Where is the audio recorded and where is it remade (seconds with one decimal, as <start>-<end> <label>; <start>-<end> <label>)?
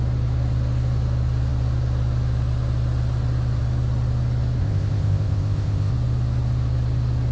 0.0-4.6 recorded; 4.6-5.9 remade; 5.9-7.3 recorded